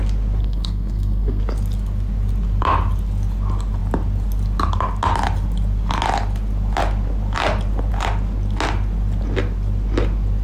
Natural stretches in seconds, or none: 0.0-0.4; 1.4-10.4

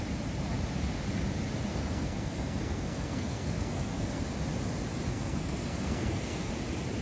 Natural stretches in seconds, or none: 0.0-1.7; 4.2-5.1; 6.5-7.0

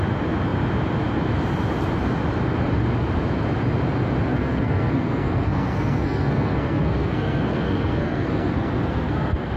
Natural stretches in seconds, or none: 0.0-4.3

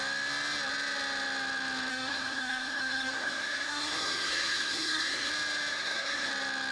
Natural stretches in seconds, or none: 0.0-1.9; 5.3-5.7; 6.3-6.7

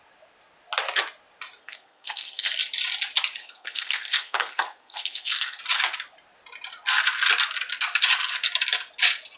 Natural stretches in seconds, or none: 0.0-1.6; 2.5-3.4; 5.6-9.4

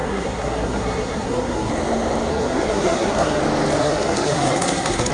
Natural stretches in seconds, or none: 1.7-2.3; 3.4-3.8